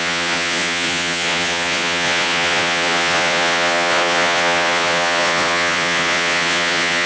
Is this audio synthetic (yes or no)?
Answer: yes